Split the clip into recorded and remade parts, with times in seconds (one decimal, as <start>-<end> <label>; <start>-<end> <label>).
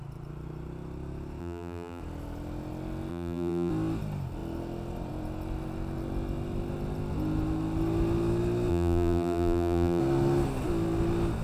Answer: 0.0-1.4 recorded; 1.4-2.0 remade; 2.0-3.1 recorded; 3.1-3.7 remade; 3.7-8.7 recorded; 8.7-10.0 remade; 10.0-11.4 recorded